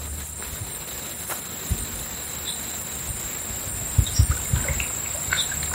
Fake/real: real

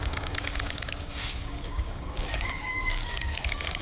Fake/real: fake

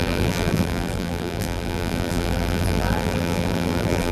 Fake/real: fake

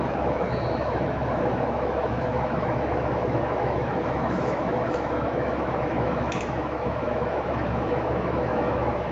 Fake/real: fake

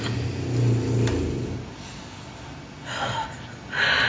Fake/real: real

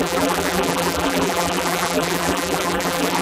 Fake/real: fake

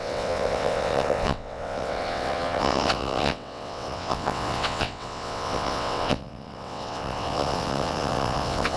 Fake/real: fake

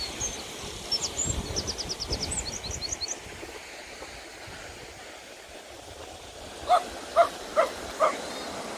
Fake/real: real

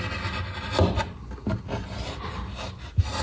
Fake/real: real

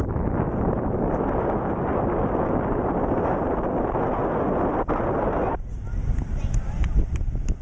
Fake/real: real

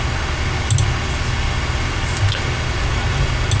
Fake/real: real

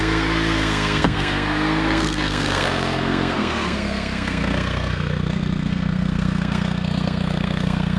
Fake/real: fake